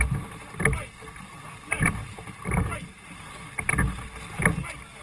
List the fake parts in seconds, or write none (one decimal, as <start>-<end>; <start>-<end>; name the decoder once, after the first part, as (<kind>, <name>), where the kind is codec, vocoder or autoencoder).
2.0-3.5 (vocoder, BigVGAN v2)